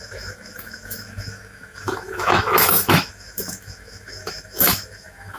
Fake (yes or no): yes